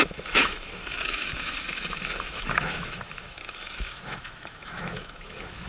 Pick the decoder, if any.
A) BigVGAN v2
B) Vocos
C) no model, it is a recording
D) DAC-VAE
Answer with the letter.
D